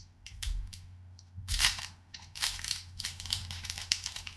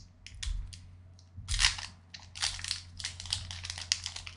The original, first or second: second